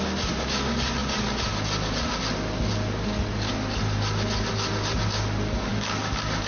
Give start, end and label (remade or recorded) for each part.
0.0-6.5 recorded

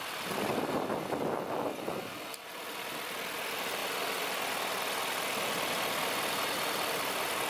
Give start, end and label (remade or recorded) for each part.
0.0-7.5 recorded

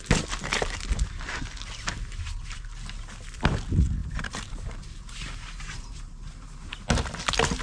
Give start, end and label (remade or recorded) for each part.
0.0-4.0 recorded; 4.0-6.7 remade; 6.7-7.6 recorded

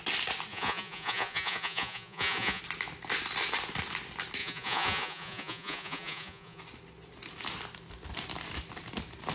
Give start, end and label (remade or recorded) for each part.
0.0-0.5 recorded; 0.5-2.6 remade; 2.6-4.4 recorded; 4.4-6.6 remade; 6.6-9.3 recorded